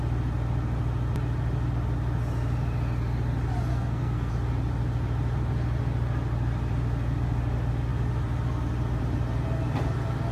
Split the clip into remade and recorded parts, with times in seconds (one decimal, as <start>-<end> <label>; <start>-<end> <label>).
0.0-3.7 recorded; 3.7-4.3 remade; 4.3-10.3 recorded